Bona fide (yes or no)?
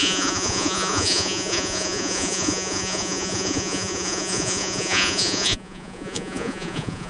no